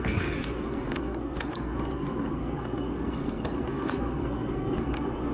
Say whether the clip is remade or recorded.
remade